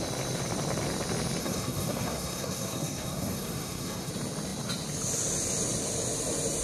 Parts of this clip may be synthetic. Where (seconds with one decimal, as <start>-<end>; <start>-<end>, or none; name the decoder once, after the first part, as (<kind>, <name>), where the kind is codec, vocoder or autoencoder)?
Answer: 1.4-4.1 (codec, SNAC)